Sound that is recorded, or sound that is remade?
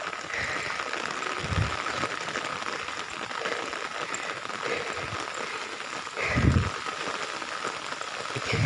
recorded